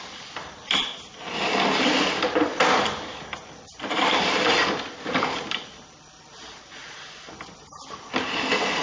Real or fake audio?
real